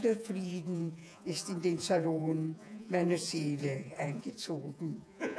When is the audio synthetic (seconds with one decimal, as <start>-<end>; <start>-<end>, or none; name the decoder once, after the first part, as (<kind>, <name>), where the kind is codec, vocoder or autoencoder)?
0.0-5.4 (vocoder, Vocos)